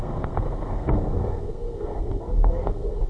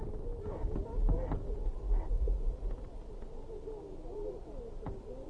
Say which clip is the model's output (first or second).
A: first